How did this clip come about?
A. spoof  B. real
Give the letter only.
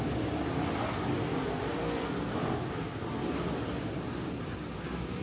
B